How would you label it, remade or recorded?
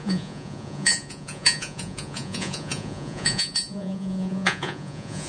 remade